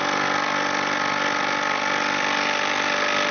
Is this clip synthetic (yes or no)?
no